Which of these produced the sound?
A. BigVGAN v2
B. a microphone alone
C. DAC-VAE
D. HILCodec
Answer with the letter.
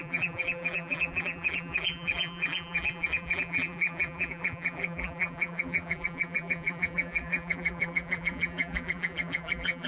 A